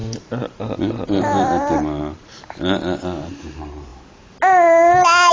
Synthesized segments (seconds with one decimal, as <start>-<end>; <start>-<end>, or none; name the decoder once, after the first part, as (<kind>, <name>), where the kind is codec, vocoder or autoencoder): 0.0-3.9 (vocoder, BigVGAN v2)